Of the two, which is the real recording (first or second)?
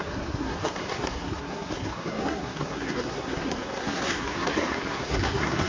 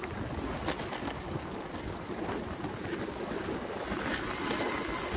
second